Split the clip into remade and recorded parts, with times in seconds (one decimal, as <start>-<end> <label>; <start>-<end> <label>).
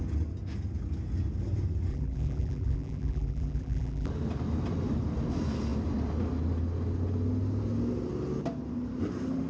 0.0-1.9 recorded; 1.9-4.1 remade; 4.1-9.5 recorded